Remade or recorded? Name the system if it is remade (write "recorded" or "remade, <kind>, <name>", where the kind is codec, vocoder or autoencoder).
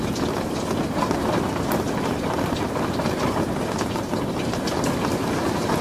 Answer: recorded